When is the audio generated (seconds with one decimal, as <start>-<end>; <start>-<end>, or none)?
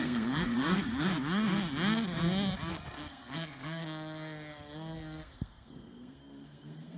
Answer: 0.0-1.1; 2.7-7.0